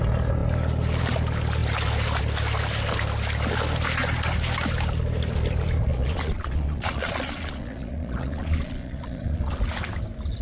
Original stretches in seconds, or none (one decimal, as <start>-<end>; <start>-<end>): 0.0-5.9; 9.6-10.4

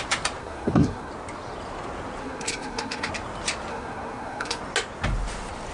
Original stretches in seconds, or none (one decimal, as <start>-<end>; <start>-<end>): 0.0-0.4; 1.1-2.2; 3.1-3.7; 4.6-5.7